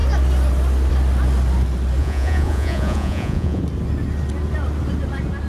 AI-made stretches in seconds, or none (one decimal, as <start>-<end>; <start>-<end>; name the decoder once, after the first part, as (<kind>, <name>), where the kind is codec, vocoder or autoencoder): 2.0-3.6 (vocoder, Vocos)